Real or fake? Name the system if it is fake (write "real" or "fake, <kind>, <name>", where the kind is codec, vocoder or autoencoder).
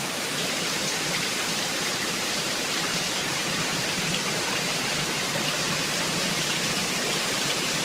fake, vocoder, BigVGAN v2